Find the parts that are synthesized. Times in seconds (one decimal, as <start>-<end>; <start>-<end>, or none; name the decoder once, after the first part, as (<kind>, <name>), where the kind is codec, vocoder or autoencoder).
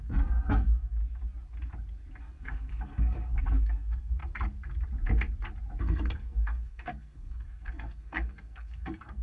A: 0.0-1.0 (codec, SNAC); 2.2-4.2; 5.8-9.2